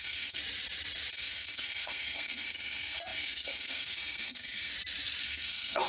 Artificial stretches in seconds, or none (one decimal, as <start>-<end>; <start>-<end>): 0.0-0.4; 1.1-4.7; 5.2-5.9